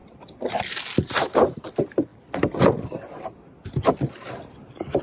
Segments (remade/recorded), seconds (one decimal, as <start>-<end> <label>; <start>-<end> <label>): 0.0-1.5 remade; 1.5-2.1 recorded; 2.1-4.5 remade; 4.5-5.0 recorded